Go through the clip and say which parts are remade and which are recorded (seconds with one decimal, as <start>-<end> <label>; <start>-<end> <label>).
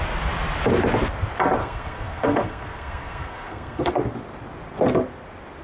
0.0-1.6 recorded; 1.6-3.9 remade; 3.9-5.6 recorded